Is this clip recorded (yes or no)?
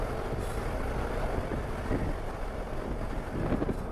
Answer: yes